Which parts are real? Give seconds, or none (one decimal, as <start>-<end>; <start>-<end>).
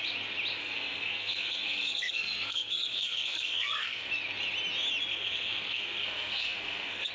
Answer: 0.0-0.6; 4.1-5.1